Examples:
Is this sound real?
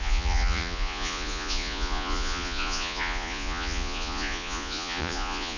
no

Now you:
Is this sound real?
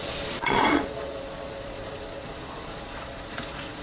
no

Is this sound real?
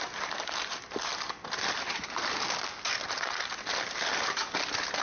yes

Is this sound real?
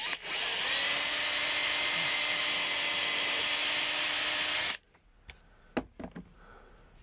yes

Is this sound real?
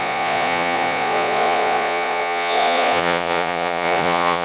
no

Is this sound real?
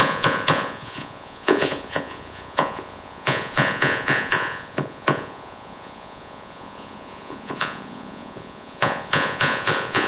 no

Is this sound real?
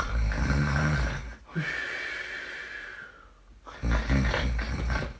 yes